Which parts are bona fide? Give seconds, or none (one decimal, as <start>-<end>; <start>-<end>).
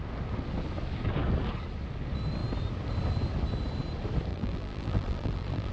0.0-4.3